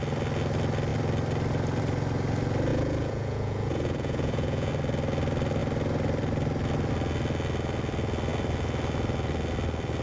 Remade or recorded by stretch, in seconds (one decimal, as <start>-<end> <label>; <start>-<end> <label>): 0.0-2.7 recorded; 2.7-4.7 remade; 4.7-10.0 recorded